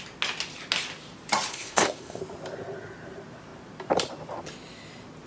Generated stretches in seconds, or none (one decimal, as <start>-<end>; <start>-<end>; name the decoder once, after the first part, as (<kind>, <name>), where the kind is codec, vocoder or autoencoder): 1.5-2.2 (codec, ZipCodec)